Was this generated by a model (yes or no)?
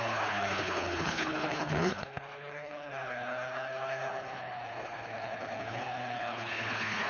yes